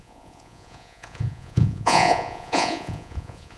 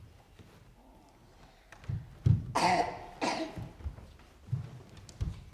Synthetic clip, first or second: first